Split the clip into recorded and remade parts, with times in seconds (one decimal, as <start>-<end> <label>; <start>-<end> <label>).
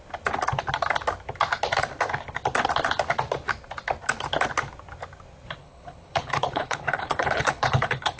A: 0.0-5.6 recorded; 5.6-8.2 remade